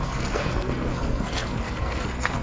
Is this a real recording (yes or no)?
no